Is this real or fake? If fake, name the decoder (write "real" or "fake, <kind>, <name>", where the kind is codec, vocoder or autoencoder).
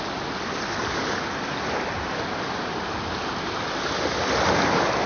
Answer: real